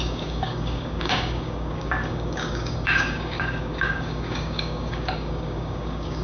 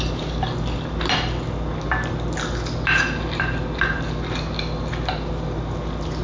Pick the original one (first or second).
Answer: second